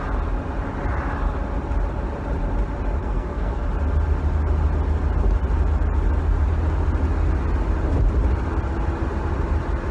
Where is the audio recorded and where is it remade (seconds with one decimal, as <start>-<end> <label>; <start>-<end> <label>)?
0.0-3.0 recorded; 3.0-3.6 remade; 3.6-9.9 recorded

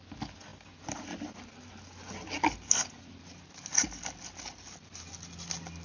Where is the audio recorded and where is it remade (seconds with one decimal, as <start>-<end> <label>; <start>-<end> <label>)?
0.0-5.8 recorded